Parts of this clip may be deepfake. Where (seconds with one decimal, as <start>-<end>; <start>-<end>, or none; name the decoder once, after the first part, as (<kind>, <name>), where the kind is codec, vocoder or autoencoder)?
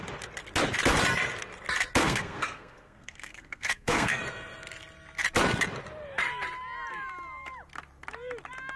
2.0-4.2 (codec, SNAC)